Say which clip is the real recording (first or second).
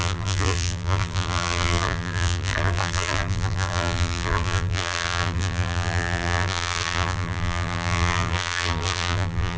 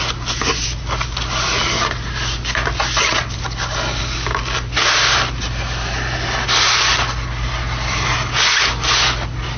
second